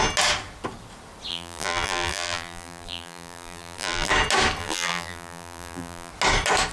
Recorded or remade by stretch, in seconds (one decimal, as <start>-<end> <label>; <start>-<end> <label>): 0.0-1.3 recorded; 1.3-4.1 remade; 4.1-4.6 recorded; 4.6-6.1 remade; 6.1-6.7 recorded